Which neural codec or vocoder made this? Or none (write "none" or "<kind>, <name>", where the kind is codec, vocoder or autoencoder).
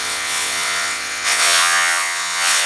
vocoder, WaveNeXt